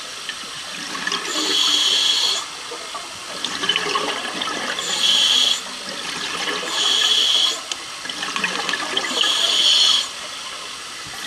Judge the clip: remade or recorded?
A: recorded